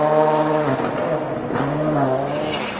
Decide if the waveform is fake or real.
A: real